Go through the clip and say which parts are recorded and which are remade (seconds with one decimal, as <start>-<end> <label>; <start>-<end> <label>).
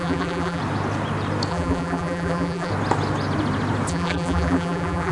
0.0-0.6 remade; 0.6-1.5 recorded; 1.5-2.7 remade; 2.7-3.9 recorded; 3.9-5.1 remade